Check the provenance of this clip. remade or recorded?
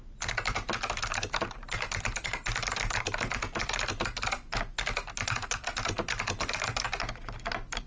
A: recorded